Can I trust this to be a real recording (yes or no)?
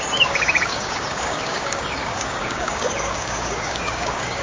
no